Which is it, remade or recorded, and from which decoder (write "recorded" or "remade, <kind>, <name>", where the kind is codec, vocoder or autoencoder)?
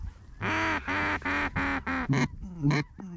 recorded